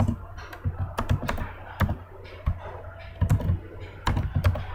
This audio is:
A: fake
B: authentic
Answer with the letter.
B